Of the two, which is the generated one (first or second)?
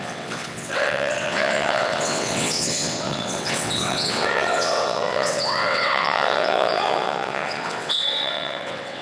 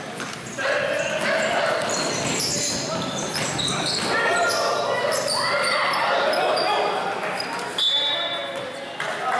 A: first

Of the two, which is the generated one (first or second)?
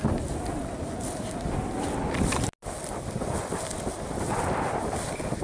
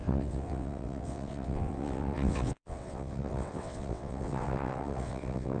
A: second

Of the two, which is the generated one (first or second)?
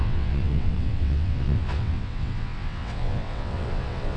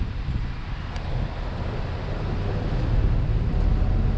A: first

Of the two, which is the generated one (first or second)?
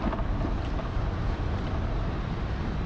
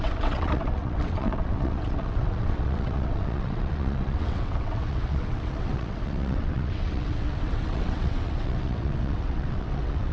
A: second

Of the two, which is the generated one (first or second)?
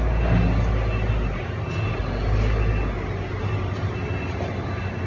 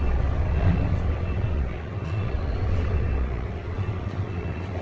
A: second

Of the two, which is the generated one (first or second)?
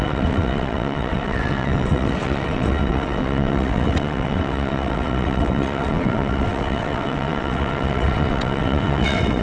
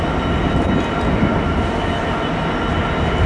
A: first